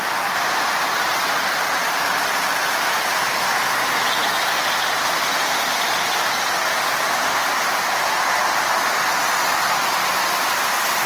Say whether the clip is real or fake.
real